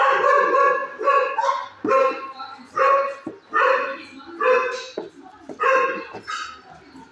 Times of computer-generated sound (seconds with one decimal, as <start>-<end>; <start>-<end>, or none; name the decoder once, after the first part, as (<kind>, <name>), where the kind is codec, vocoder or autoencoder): none